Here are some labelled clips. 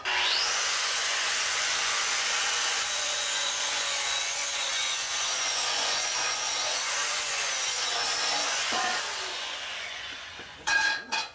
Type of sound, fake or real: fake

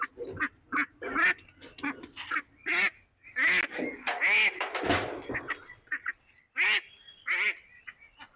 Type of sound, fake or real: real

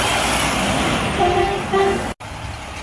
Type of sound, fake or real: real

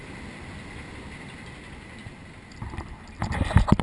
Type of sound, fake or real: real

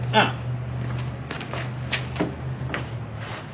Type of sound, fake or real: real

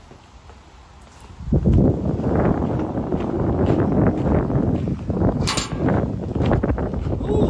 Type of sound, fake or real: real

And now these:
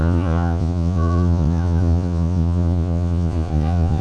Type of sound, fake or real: fake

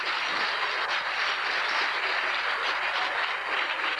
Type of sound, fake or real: real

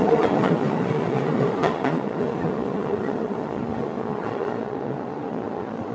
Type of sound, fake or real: fake